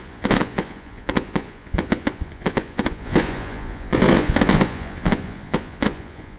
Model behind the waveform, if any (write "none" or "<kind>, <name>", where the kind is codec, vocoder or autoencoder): vocoder, Vocos